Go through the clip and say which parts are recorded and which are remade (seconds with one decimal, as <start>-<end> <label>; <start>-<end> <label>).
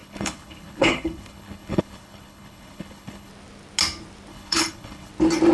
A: 0.0-3.3 remade; 3.3-4.3 recorded; 4.3-5.1 remade; 5.1-5.5 recorded